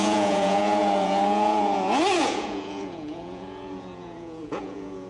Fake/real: fake